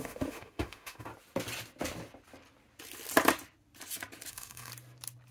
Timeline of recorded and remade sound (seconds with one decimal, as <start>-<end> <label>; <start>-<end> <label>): 0.0-1.1 remade; 1.1-4.3 recorded; 4.3-4.7 remade; 4.7-5.3 recorded